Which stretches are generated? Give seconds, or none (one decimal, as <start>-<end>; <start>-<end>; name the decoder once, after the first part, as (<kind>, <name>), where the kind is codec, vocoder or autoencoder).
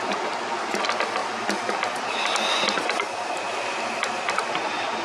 none